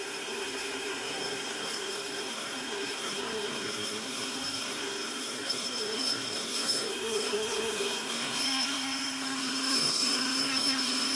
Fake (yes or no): yes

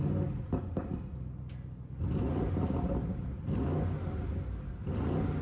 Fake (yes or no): no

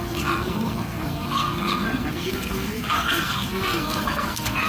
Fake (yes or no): yes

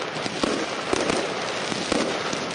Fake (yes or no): no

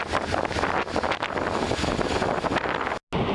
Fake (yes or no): no